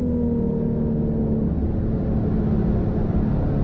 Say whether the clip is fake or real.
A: real